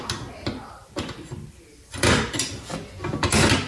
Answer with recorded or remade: recorded